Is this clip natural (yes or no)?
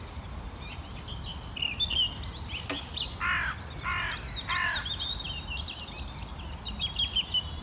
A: yes